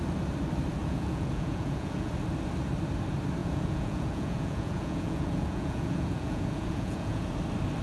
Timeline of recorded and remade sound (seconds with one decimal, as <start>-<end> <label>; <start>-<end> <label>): 0.0-0.8 recorded; 0.8-2.1 remade; 2.1-3.4 recorded; 3.4-7.3 remade; 7.3-7.8 recorded

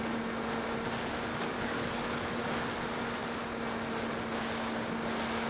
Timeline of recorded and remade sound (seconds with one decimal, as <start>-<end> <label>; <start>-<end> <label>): 0.0-1.3 recorded; 1.3-2.5 remade; 2.5-5.5 recorded

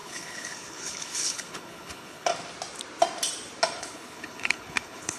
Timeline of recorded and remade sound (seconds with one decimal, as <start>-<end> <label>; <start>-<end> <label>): 0.0-2.3 remade; 2.3-3.8 recorded; 3.8-5.2 remade